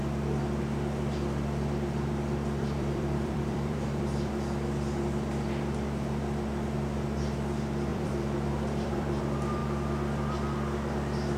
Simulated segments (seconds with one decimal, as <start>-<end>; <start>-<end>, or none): 2.6-4.3; 7.9-9.2